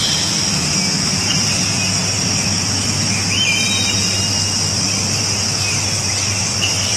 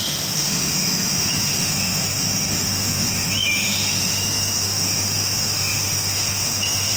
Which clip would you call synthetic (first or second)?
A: second